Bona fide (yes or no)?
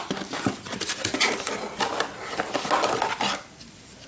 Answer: yes